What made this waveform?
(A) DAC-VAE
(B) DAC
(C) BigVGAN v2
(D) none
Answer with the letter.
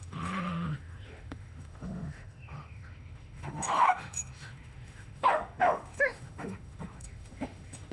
A